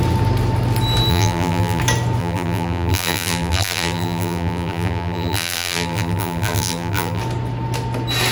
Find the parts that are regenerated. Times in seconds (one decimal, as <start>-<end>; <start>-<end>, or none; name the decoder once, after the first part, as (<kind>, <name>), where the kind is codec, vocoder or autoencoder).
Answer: 1.1-1.8 (vocoder, BigVGAN v2); 2.2-7.2